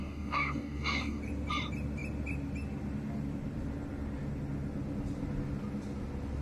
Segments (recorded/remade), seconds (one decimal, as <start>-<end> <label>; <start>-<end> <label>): 0.0-1.2 remade; 1.2-6.4 recorded